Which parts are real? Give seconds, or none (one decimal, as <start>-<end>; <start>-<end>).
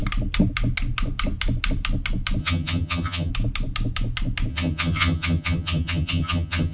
0.0-2.4; 3.3-4.5